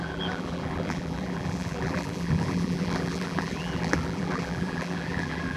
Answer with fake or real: fake